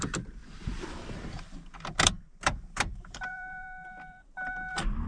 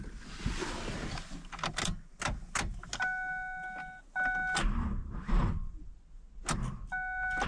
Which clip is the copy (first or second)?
first